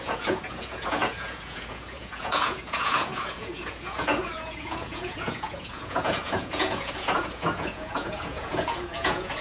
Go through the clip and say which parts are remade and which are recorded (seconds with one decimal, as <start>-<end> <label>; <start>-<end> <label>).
0.0-9.4 remade